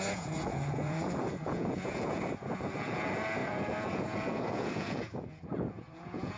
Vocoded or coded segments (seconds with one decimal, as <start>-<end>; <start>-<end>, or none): 0.0-6.4